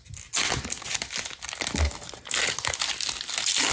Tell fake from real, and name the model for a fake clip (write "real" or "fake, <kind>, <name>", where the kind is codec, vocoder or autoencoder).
real